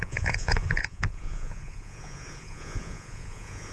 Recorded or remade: remade